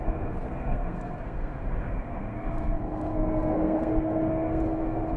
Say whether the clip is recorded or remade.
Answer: remade